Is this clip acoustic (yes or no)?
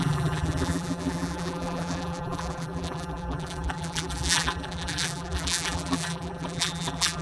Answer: no